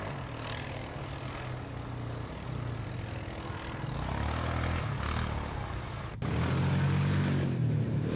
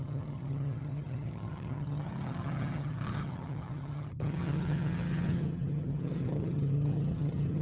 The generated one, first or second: second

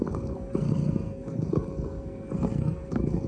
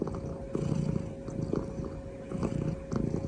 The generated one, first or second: first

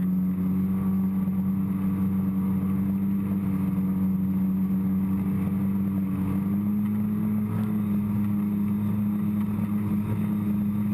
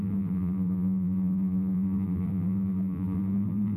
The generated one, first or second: second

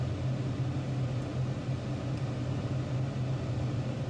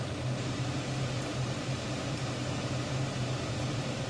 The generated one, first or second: second